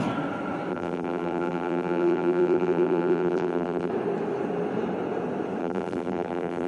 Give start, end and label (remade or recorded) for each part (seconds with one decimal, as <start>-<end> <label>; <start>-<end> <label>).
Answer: 0.0-0.7 recorded; 0.7-3.9 remade; 3.9-5.6 recorded; 5.6-6.7 remade